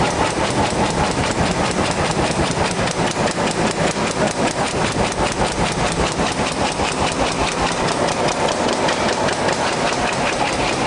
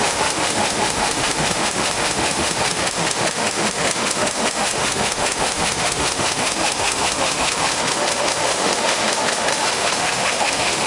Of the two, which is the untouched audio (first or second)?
first